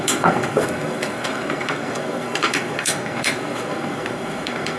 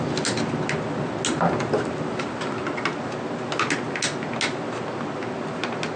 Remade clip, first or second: first